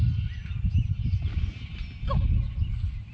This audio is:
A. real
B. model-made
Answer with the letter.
A